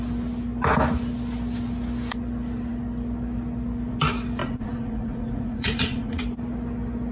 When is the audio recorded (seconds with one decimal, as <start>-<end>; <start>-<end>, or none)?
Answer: 0.0-4.4; 6.2-7.1